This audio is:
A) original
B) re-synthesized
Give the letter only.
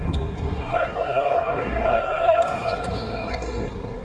B